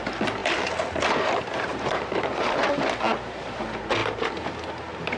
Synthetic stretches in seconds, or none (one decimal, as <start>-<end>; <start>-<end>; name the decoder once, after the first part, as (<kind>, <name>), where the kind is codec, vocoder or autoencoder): 1.7-2.6 (vocoder, BigVGAN v2)